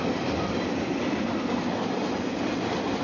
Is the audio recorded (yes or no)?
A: yes